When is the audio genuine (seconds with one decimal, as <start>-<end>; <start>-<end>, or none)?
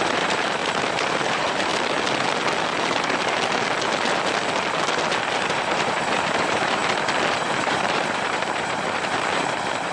0.6-1.1; 1.7-5.2; 6.8-7.3